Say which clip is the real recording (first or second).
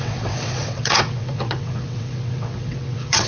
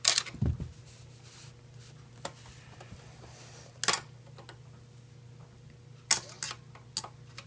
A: second